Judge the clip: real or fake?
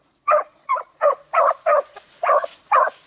fake